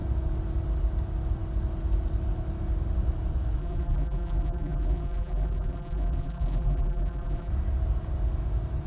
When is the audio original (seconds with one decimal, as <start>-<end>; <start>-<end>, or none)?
0.0-3.6; 7.5-8.9

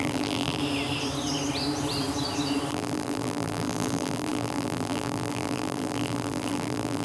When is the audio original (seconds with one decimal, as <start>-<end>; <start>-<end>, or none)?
0.6-2.7

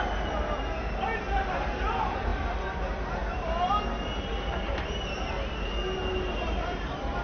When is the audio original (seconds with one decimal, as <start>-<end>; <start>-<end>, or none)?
0.0-7.2

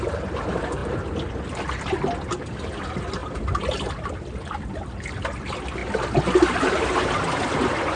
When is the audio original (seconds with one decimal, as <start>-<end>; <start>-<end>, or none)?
0.0-0.8; 1.4-3.2; 4.7-5.8; 7.2-8.0

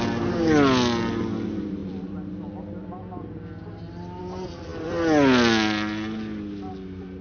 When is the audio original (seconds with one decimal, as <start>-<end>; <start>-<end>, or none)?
0.0-7.2